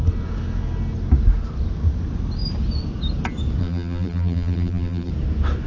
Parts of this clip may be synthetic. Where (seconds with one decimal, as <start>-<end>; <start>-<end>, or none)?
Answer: 3.6-5.1